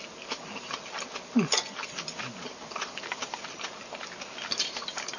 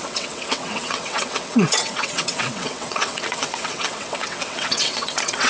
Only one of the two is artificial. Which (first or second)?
second